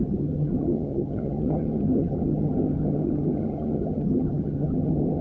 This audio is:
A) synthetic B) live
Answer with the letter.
A